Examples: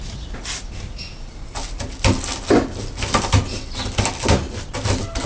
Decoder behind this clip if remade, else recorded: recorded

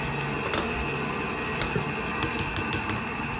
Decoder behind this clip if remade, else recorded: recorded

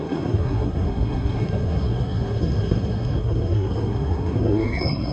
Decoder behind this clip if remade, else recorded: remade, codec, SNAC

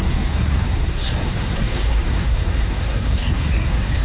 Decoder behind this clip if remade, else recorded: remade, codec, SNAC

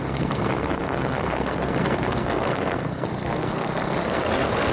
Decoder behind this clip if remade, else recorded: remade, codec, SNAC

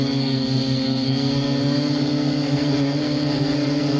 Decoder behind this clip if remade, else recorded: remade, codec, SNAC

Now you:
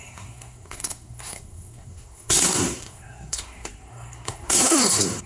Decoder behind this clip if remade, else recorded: remade, codec, SNAC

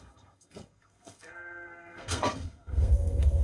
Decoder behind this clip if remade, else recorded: remade, codec, SNAC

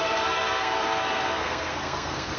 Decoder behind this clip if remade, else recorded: remade, codec, SNAC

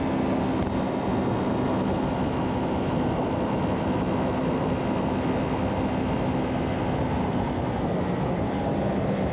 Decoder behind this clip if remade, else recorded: recorded